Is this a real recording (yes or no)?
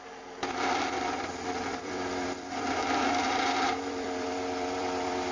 no